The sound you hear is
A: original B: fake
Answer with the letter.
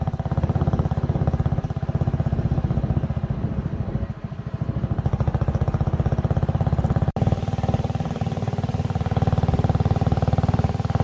A